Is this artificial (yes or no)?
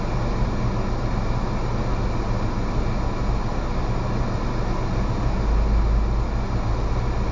no